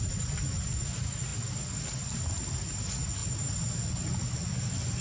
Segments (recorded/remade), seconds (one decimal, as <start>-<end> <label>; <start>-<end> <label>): 0.0-5.0 recorded